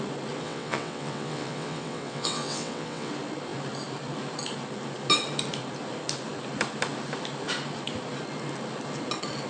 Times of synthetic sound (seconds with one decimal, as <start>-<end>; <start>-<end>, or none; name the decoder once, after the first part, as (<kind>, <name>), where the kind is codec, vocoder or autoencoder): 0.4-3.1 (vocoder, WaveNeXt)